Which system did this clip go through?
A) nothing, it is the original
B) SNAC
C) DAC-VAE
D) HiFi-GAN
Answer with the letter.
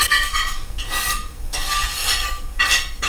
B